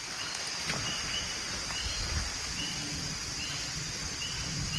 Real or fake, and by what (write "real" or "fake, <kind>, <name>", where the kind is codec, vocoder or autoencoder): real